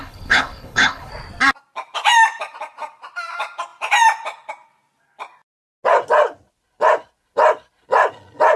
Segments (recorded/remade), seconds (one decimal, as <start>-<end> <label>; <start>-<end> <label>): 0.0-1.1 remade; 1.1-8.6 recorded